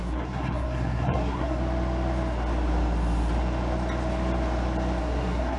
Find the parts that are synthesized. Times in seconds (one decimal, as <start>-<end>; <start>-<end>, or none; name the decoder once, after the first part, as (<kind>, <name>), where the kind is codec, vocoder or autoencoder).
0.0-1.6 (codec, SNAC); 5.0-5.6